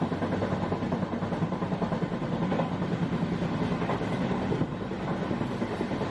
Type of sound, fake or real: real